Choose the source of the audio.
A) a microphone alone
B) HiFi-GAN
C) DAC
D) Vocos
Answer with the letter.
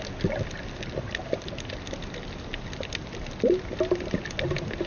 A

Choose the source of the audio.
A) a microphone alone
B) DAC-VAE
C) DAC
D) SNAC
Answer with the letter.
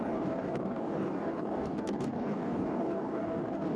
C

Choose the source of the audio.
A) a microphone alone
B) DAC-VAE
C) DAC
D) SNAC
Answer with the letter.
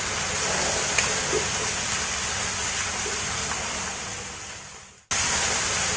A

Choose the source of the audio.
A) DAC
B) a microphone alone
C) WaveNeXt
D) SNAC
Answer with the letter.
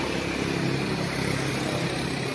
B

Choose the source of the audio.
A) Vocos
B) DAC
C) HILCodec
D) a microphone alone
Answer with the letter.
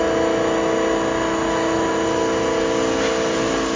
D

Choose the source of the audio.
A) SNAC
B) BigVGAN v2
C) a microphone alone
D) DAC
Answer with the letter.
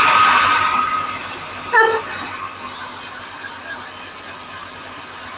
C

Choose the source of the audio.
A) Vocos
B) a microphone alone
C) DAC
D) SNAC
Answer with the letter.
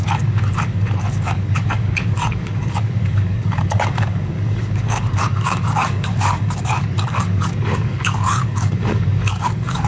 C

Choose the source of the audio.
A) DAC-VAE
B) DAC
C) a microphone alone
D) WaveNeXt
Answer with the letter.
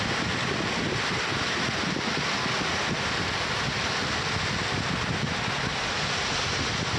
C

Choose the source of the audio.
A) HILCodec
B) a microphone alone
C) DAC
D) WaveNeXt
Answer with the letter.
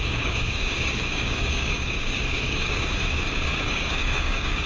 C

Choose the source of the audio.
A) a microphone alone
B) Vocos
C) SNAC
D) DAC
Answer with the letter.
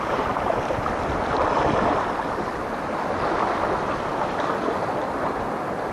A